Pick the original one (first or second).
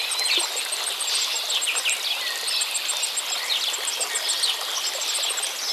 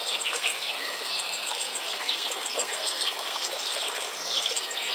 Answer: first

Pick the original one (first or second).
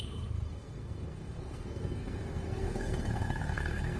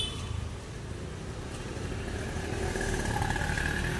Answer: second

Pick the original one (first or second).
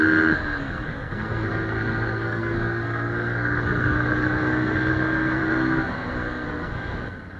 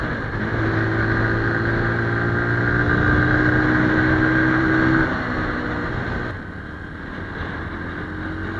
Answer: second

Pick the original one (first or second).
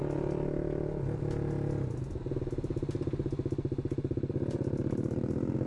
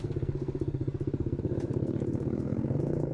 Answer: first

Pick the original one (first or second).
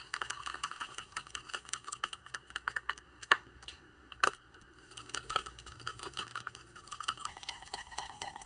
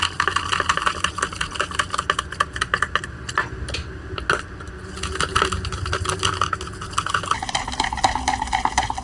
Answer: second